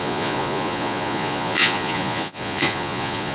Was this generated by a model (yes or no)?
yes